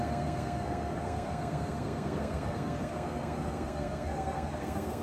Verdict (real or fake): fake